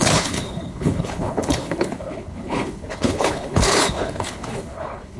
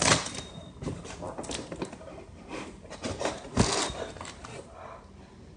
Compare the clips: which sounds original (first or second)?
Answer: second